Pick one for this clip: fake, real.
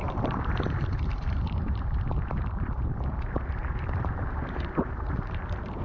fake